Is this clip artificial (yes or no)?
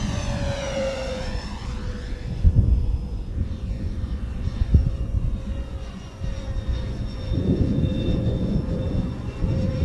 yes